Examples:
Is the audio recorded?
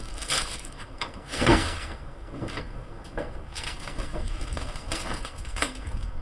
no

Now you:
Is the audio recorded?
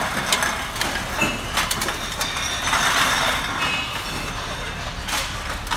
yes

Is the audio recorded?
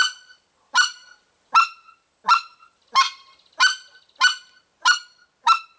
yes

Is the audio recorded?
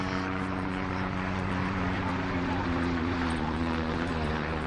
no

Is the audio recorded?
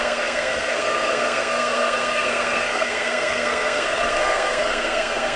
no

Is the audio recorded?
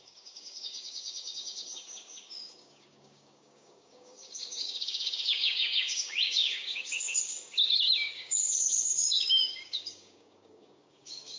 no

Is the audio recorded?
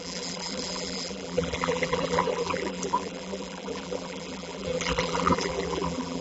no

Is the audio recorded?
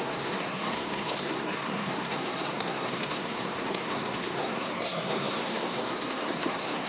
no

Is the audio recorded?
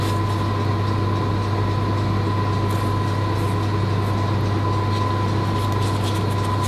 yes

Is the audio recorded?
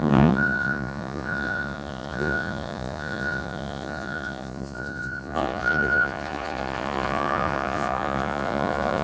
no